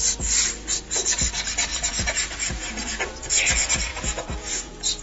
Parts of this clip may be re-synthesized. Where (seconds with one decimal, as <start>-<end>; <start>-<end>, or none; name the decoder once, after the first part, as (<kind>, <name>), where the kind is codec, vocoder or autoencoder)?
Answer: 1.7-3.0 (vocoder, Vocos); 3.9-5.0